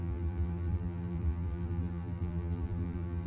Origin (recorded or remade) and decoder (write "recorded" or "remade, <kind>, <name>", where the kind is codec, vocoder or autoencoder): remade, vocoder, BigVGAN v2